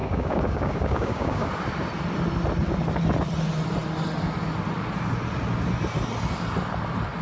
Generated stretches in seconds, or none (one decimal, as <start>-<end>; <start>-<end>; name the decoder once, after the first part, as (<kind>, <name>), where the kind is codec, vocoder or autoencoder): 0.0-1.5 (codec, DAC)